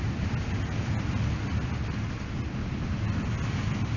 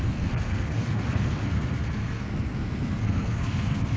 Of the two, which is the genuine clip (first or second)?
first